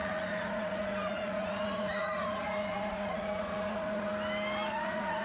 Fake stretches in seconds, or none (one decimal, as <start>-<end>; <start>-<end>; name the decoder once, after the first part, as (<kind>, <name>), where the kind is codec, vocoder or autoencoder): 0.0-4.1 (vocoder, Vocos); 4.7-5.2